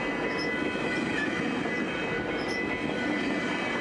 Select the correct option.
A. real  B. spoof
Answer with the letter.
A